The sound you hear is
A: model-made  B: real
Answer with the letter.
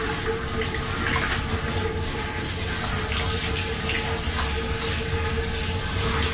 B